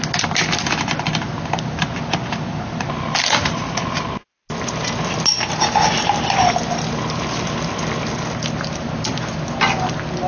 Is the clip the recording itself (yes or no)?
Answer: yes